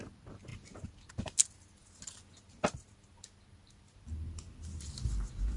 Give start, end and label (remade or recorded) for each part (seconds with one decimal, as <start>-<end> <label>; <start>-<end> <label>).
0.0-5.6 recorded